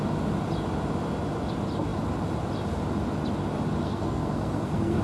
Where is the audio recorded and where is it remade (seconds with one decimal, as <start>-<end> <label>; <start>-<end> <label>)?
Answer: 0.0-3.8 recorded; 3.8-5.0 remade